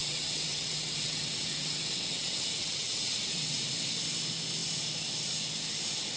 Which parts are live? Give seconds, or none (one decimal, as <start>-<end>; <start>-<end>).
3.7-6.2